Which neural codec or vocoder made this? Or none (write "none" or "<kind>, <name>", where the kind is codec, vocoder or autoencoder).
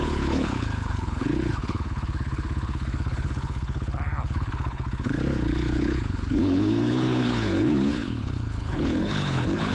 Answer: codec, HILCodec